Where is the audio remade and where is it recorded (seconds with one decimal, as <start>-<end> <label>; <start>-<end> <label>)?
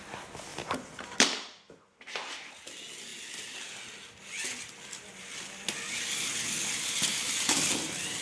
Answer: 0.0-0.5 recorded; 0.5-1.7 remade; 1.7-7.1 recorded; 7.1-8.2 remade